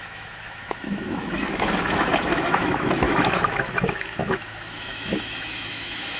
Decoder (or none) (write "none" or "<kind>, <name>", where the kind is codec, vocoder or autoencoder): autoencoder, DAC-VAE